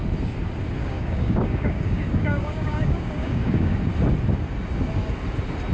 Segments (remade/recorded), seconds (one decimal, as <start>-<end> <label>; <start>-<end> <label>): 0.0-0.8 recorded; 0.8-3.7 remade; 3.7-5.7 recorded